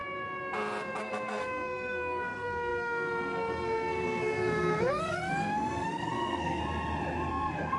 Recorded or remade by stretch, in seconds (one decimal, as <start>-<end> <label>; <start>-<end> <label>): 0.0-1.0 recorded; 1.0-6.6 remade; 6.6-7.3 recorded; 7.3-7.8 remade